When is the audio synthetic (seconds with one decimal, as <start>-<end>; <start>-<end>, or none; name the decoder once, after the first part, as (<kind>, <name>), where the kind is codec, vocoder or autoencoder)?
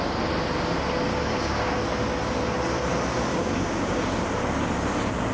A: 1.1-1.7 (codec, DAC); 3.3-4.0